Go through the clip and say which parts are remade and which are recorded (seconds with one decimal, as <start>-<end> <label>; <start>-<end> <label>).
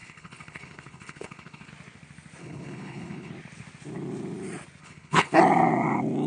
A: 0.0-1.7 remade; 1.7-2.4 recorded; 2.4-3.3 remade; 3.3-4.8 recorded; 4.8-5.4 remade; 5.4-6.3 recorded